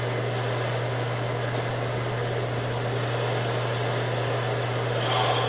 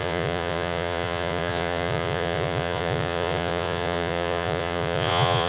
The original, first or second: first